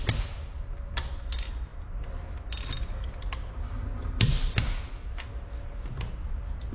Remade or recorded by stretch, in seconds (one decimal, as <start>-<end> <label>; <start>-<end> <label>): 0.0-6.7 recorded